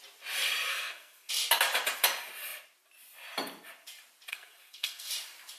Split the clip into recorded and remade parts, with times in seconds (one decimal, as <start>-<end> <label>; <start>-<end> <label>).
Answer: 0.0-0.7 recorded; 0.7-1.3 remade; 1.3-4.3 recorded; 4.3-5.1 remade; 5.1-5.6 recorded